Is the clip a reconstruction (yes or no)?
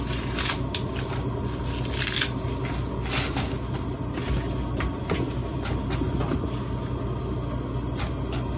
no